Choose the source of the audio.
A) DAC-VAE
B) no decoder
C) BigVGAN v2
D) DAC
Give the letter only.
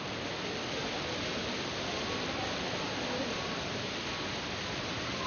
B